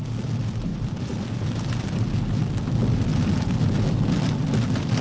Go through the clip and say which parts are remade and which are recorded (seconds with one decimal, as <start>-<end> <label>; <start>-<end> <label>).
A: 0.0-5.0 recorded

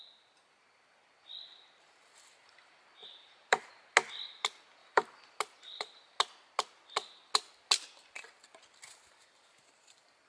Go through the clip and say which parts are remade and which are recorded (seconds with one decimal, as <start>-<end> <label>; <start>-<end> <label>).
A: 0.0-3.0 recorded; 3.0-3.7 remade; 3.7-4.8 recorded; 4.8-5.4 remade; 5.4-10.3 recorded

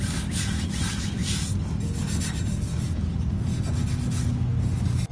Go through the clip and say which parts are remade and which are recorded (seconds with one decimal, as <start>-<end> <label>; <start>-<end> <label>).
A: 0.0-5.1 recorded

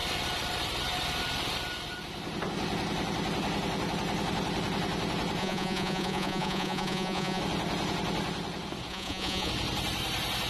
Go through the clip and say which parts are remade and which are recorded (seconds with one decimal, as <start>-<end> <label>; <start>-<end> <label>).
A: 0.0-5.4 recorded; 5.4-7.4 remade; 7.4-8.9 recorded; 8.9-9.5 remade; 9.5-10.5 recorded

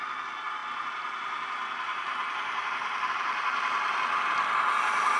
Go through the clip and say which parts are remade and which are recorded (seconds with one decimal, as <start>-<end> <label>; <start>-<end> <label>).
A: 0.0-5.2 recorded